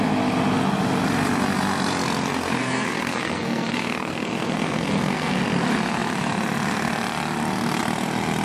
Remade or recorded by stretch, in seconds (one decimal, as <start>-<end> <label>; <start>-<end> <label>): 0.0-2.6 recorded; 2.6-5.4 remade; 5.4-8.4 recorded